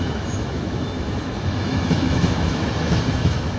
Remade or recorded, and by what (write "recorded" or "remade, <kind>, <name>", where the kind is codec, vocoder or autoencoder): remade, autoencoder, DAC-VAE